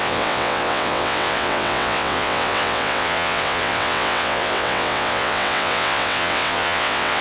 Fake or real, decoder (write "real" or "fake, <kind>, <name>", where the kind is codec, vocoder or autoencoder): fake, vocoder, WaveNeXt